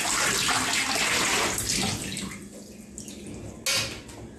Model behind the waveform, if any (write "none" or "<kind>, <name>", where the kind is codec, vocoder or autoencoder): none